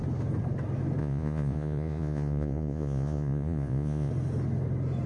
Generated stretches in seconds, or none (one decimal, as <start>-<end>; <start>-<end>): 1.0-4.1